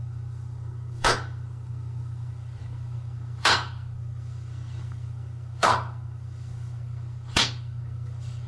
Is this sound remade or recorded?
remade